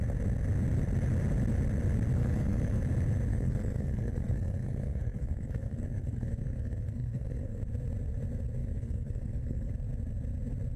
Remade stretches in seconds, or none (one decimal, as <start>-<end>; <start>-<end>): 2.2-2.8; 3.3-7.6; 8.6-9.7